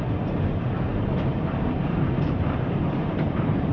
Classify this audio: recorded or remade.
remade